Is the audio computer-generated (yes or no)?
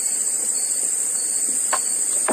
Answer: yes